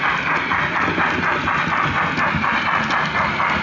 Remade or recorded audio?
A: recorded